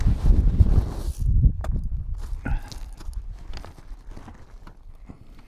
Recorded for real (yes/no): yes